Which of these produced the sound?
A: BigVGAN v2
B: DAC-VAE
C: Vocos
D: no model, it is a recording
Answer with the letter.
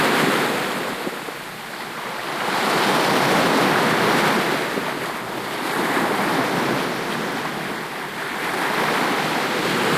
D